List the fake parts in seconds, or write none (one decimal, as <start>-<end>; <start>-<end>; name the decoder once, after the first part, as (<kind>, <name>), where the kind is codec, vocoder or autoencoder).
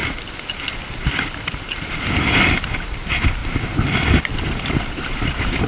1.0-3.4 (vocoder, BigVGAN v2); 4.5-5.7